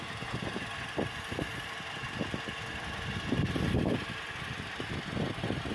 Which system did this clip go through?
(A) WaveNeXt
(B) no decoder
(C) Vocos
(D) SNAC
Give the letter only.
B